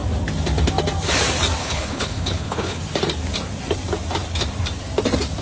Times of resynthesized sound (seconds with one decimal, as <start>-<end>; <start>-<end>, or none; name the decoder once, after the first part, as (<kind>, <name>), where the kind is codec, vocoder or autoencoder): 1.6-2.8 (codec, HILCodec)